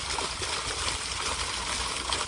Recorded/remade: recorded